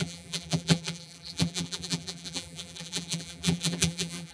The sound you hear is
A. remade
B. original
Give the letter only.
A